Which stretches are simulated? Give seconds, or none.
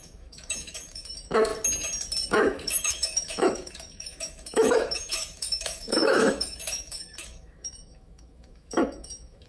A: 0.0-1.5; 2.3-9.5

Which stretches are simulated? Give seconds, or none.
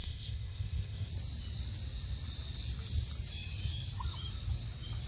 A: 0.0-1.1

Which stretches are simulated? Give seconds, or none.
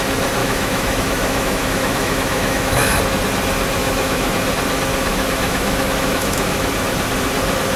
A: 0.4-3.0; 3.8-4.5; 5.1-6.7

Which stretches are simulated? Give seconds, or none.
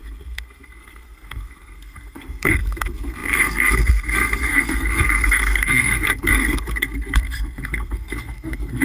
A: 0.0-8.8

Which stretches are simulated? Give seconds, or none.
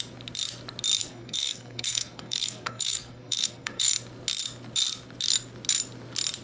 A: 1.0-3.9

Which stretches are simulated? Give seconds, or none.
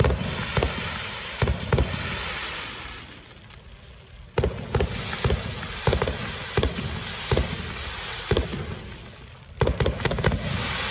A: none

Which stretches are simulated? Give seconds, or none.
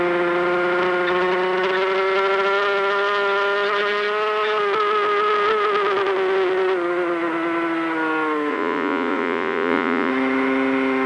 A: 8.5-10.1